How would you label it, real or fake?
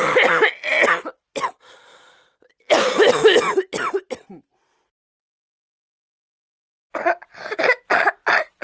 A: real